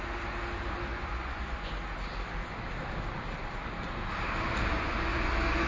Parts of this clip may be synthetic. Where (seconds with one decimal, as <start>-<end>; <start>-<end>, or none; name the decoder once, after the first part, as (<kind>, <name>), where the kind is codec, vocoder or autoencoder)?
0.9-1.7 (vocoder, Vocos); 4.7-5.3